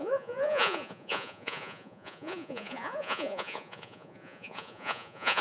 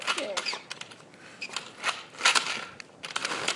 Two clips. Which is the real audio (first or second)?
second